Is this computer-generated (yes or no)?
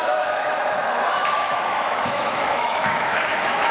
yes